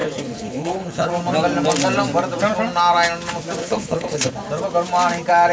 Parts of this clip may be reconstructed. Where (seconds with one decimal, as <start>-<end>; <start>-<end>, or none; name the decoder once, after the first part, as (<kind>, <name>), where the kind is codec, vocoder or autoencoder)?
0.0-1.1 (codec, HILCodec); 3.6-4.3